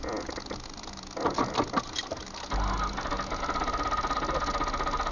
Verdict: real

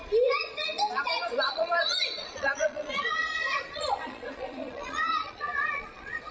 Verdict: fake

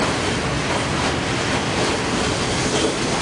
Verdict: real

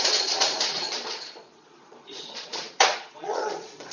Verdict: fake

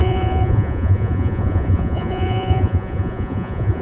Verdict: fake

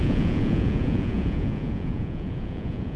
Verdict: fake